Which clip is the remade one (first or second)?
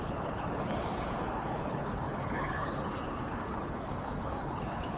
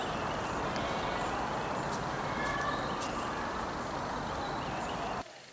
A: first